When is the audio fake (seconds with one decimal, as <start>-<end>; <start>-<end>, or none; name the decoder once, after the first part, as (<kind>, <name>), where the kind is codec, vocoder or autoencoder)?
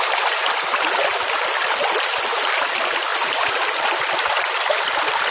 none